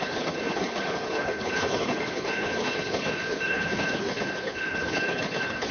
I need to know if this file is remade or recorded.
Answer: remade